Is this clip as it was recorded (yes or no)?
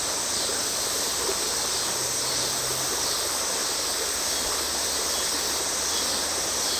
yes